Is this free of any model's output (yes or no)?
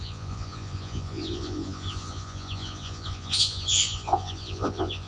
no